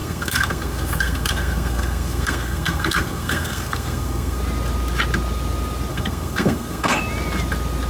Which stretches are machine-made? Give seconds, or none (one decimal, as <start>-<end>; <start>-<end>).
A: 0.0-4.4; 5.9-7.0